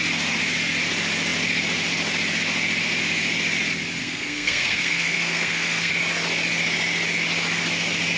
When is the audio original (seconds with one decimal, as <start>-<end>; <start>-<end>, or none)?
0.0-4.0; 5.9-8.2